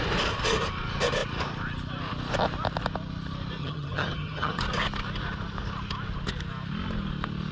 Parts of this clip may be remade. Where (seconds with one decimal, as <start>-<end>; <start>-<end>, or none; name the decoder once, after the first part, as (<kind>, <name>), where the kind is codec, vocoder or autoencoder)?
3.6-4.6 (vocoder, HiFi-GAN)

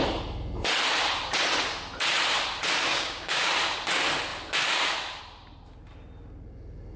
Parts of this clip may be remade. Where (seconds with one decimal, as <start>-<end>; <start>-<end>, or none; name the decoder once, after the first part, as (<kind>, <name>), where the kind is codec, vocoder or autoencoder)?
2.9-3.5 (codec, DAC)

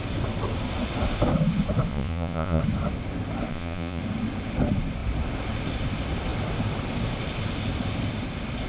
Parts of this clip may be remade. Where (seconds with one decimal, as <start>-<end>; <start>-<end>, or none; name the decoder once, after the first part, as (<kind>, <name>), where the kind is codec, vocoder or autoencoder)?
1.9-2.6 (vocoder, Vocos); 3.5-4.0

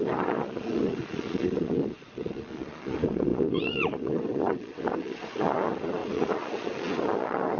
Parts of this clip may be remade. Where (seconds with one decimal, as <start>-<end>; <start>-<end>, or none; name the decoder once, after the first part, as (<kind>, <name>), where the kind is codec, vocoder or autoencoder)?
0.0-7.6 (vocoder, Vocos)

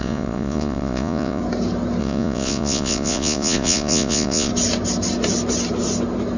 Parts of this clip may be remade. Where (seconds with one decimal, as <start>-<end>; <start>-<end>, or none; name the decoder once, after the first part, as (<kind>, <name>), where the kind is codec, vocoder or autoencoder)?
0.0-1.4 (vocoder, Vocos); 2.0-4.5

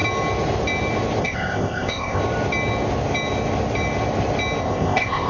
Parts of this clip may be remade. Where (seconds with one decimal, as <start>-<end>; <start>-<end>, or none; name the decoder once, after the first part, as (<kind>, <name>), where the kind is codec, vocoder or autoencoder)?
1.2-2.2 (codec, ZipCodec); 4.6-5.3

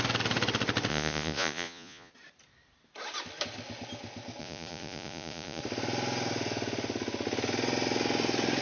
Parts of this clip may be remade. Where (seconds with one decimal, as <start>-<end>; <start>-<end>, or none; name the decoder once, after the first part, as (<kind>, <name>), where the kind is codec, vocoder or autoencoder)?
0.9-2.1 (vocoder, Vocos); 4.4-5.6